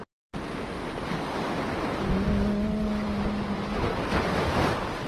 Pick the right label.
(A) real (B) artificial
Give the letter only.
A